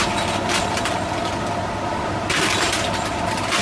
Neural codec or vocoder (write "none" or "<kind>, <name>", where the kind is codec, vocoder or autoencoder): none